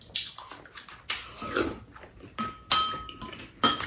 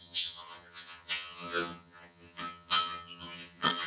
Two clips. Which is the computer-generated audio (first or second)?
second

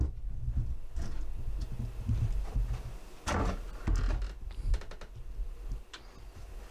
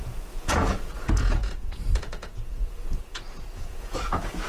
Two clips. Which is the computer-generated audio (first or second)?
second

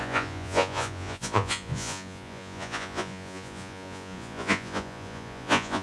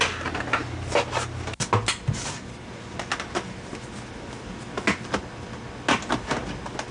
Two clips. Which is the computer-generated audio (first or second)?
first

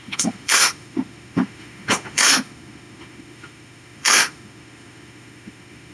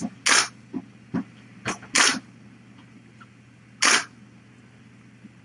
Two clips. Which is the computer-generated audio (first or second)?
first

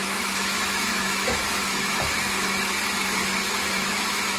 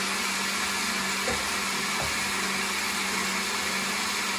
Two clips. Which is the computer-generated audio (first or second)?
first